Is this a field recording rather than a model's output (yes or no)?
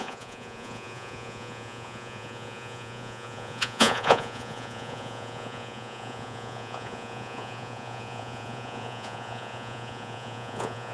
no